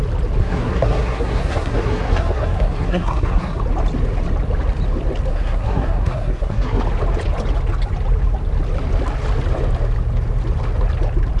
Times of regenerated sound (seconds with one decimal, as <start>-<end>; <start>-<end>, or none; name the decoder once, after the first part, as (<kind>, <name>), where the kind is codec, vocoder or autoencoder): 0.4-3.6 (codec, SNAC); 5.3-6.8